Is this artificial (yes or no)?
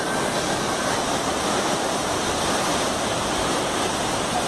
no